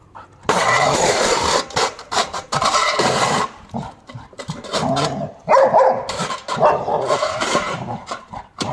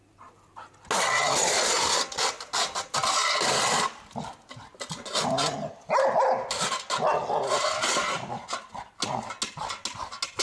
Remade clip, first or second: first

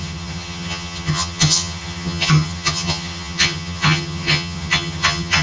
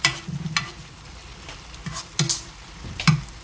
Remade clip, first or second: first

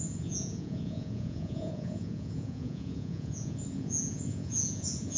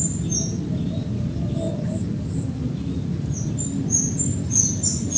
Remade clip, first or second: first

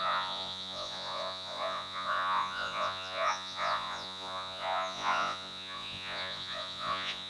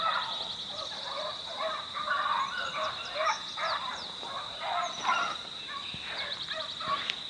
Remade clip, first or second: first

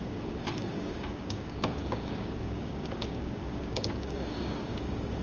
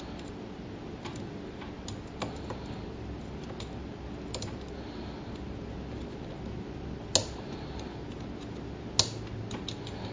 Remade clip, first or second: first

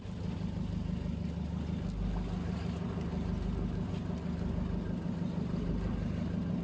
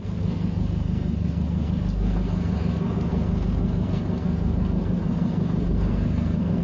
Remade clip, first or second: second